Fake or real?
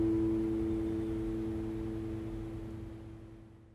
real